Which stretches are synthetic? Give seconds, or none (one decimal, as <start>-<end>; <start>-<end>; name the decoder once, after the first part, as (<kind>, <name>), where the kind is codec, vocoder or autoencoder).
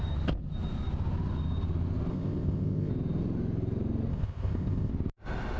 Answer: 2.1-2.9 (codec, ZipCodec); 4.1-4.9